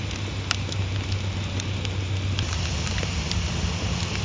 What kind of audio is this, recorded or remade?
recorded